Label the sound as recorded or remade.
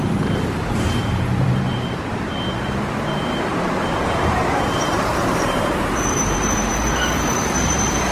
remade